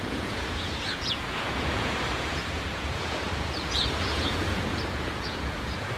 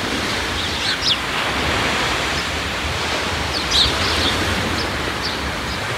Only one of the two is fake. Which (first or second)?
first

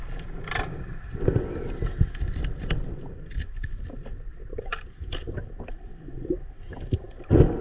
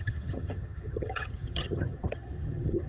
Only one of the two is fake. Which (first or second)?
second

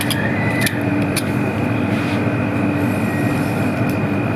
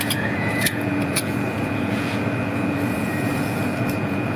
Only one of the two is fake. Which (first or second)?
second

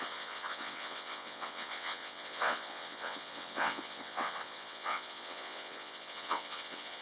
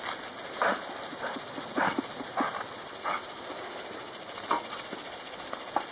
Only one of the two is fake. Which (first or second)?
first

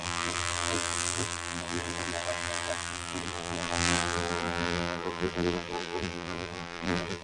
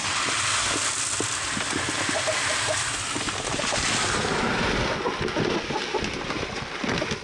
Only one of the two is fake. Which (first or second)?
first